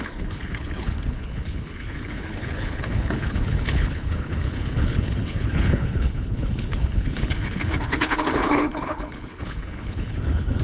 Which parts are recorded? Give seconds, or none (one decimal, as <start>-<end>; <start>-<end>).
none